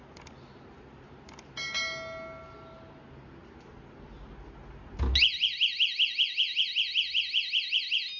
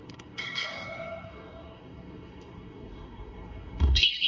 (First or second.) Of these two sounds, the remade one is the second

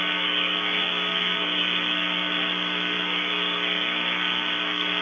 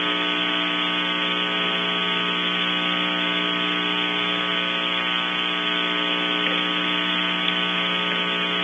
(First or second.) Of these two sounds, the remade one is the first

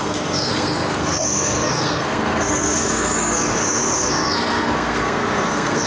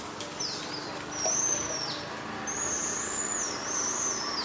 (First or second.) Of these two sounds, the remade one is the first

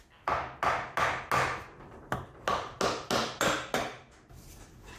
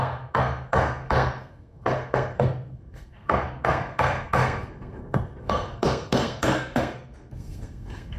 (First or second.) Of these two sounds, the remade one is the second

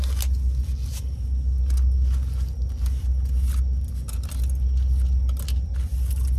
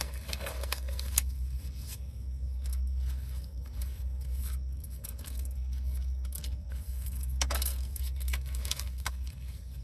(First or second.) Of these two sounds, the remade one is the second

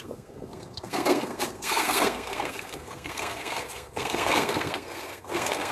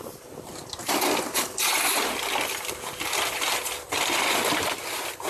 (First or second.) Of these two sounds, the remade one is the first